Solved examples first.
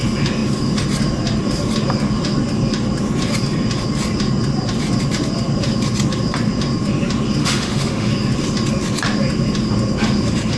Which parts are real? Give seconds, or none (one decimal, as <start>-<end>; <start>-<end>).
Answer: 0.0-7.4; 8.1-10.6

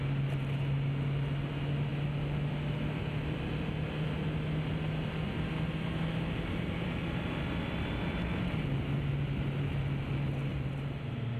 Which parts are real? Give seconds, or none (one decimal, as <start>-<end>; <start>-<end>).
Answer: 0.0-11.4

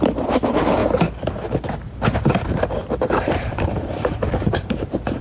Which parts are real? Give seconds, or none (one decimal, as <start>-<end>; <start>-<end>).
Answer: 0.8-2.3

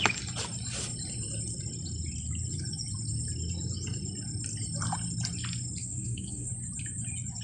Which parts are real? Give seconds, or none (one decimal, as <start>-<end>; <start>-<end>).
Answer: 0.0-5.8; 6.5-7.4

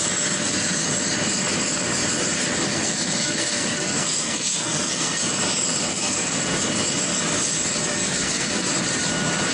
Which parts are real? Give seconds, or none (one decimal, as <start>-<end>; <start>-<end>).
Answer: 0.0-2.7; 5.2-5.9; 6.4-7.8; 8.7-9.5